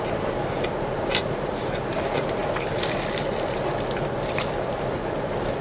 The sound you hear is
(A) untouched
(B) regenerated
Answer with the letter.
A